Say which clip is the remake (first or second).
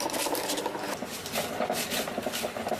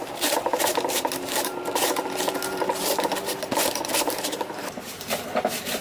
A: second